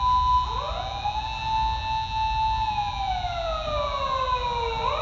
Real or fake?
real